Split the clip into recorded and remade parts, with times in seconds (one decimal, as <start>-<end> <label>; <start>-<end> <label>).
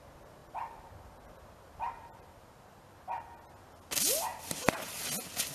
0.0-4.3 recorded; 4.3-5.0 remade; 5.0-5.5 recorded